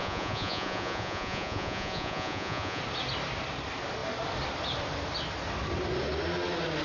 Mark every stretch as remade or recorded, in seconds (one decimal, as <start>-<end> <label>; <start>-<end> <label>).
0.0-2.8 remade; 2.8-6.8 recorded